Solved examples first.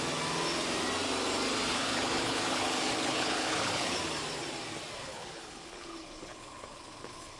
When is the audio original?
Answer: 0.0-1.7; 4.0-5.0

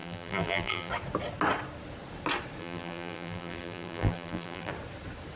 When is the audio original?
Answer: 0.9-2.6; 4.7-5.4

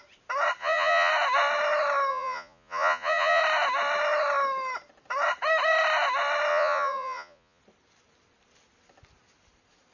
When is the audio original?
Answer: 0.0-0.6; 1.1-2.1; 3.4-6.5; 7.6-9.9

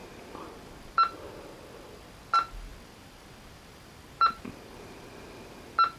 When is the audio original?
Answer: 0.8-2.7; 5.1-6.0